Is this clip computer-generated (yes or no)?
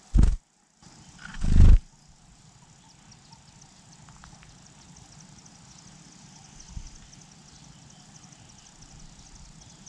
no